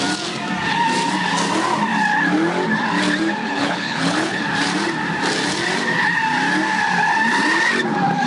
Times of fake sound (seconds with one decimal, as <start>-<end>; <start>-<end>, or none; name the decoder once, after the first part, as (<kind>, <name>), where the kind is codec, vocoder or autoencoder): 3.4-4.4 (codec, HILCodec)